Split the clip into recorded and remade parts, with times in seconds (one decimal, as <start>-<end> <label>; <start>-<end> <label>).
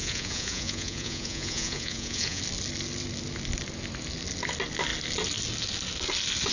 0.0-2.4 remade; 2.4-6.5 recorded